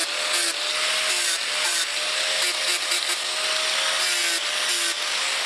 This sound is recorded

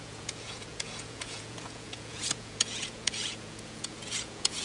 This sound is remade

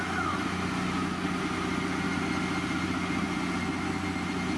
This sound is recorded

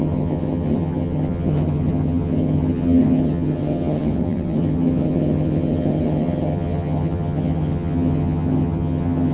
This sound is remade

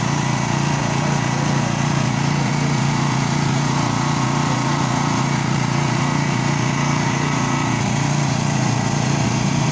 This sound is remade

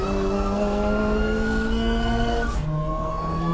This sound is remade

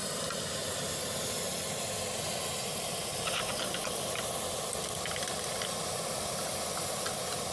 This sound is recorded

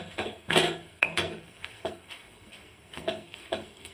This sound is remade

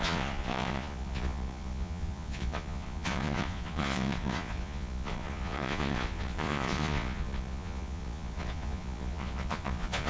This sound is remade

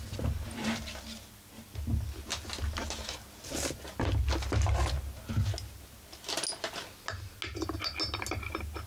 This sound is recorded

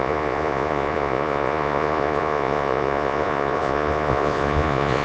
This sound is remade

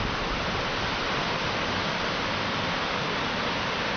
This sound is recorded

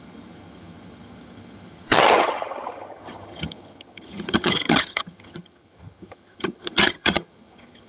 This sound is remade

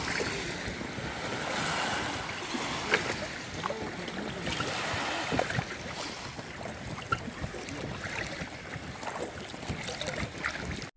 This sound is recorded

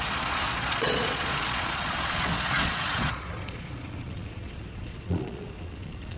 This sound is remade